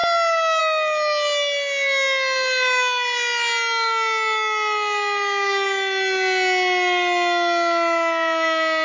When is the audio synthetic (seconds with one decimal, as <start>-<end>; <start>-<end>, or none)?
none